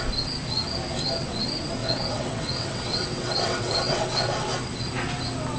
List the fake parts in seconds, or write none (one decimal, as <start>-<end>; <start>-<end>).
1.8-4.5